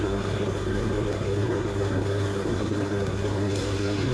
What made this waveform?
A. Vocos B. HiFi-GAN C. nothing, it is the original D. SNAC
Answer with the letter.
D